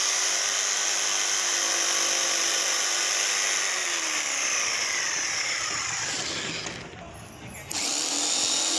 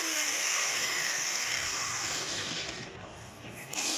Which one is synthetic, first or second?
second